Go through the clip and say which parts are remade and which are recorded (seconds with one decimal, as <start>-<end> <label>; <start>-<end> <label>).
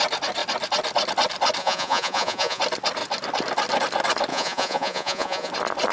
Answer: 0.0-1.6 recorded; 1.6-2.6 remade; 2.6-4.3 recorded; 4.3-5.5 remade; 5.5-5.9 recorded